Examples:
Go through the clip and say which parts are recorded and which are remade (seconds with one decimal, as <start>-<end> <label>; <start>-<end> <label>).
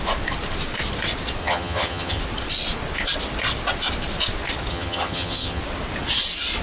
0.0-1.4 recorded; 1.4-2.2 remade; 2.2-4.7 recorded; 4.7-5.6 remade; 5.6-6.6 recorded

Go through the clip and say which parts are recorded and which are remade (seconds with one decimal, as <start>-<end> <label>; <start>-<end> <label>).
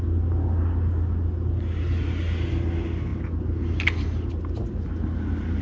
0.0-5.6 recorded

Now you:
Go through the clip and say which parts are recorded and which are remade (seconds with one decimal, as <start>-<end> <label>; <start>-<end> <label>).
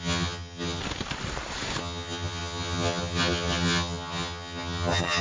0.0-0.8 remade; 0.8-1.8 recorded; 1.8-5.2 remade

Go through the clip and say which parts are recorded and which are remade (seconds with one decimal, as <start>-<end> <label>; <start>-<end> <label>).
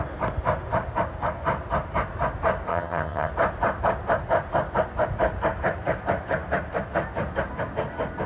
0.0-2.7 recorded; 2.7-3.3 remade; 3.3-8.3 recorded